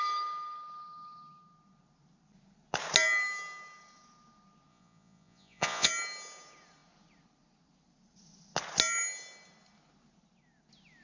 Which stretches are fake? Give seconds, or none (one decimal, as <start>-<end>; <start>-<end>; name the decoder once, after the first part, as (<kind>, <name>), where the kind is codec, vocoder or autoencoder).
4.7-5.9 (vocoder, Vocos)